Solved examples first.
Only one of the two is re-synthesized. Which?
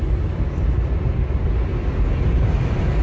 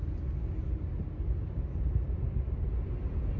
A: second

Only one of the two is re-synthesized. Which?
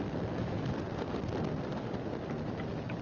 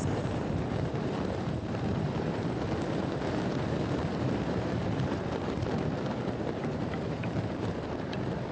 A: second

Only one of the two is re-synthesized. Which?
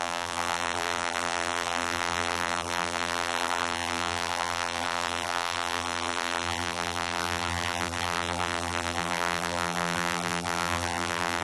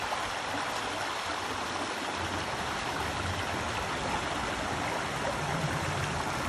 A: first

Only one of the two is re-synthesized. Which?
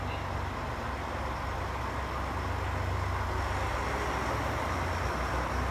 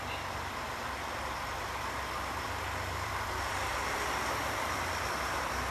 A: second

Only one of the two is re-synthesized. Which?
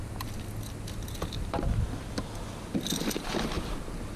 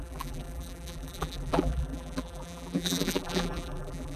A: second